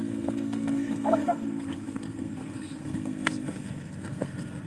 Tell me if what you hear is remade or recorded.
remade